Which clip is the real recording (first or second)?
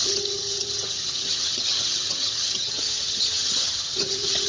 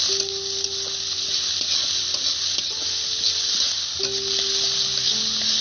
second